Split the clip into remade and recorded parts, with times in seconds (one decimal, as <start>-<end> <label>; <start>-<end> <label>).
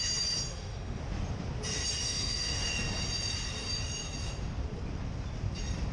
0.0-0.5 recorded; 0.5-1.0 remade; 1.0-2.0 recorded; 2.0-2.6 remade; 2.6-5.9 recorded